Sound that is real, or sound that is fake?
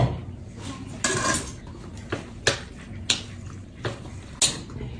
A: real